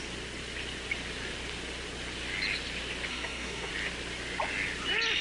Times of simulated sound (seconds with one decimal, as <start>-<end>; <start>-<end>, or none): 3.1-3.7